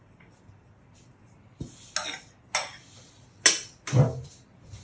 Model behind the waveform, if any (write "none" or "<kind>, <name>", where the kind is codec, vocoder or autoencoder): none